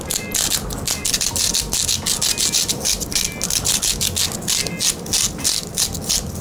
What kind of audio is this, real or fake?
real